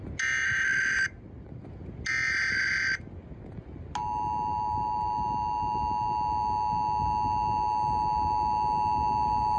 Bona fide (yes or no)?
yes